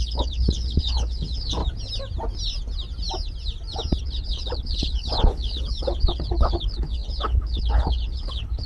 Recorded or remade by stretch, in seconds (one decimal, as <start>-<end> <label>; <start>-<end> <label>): 0.0-1.6 remade; 1.6-4.0 recorded; 4.0-8.7 remade